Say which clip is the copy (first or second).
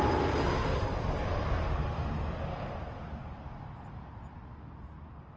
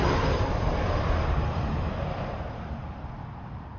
second